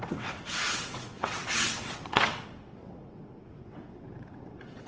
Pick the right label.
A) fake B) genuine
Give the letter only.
A